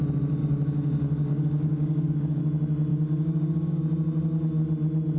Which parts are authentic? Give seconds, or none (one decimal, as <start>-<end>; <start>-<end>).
0.0-0.4; 2.4-2.9; 3.8-5.2

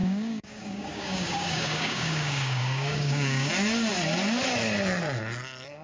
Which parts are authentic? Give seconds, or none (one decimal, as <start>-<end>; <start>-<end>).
3.5-5.8

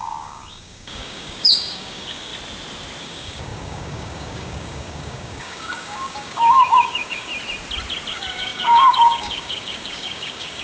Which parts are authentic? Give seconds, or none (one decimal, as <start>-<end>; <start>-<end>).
2.3-3.0; 7.3-8.1

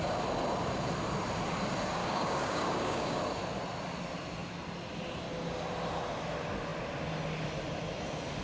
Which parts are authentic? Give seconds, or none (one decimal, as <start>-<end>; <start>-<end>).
0.0-2.0; 3.2-8.4

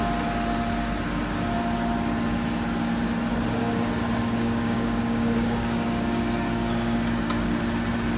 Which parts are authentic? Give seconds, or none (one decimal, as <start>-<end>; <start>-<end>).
0.0-3.6; 7.6-8.2

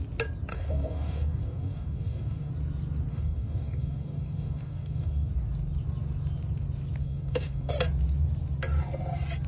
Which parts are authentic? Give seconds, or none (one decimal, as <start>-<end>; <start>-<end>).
0.0-0.5; 2.5-3.1; 5.3-7.0; 7.7-9.5

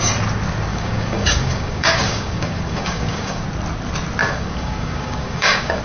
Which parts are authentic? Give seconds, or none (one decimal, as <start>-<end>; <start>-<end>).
0.0-0.7; 3.4-4.2